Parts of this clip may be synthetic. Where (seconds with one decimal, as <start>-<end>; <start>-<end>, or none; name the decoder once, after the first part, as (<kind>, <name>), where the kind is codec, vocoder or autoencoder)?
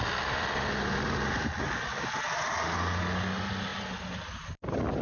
none